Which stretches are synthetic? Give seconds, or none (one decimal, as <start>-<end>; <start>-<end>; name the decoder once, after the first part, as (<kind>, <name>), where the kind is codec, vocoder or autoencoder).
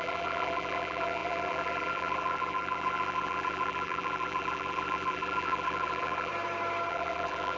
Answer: 0.0-6.3 (vocoder, BigVGAN v2); 6.9-7.6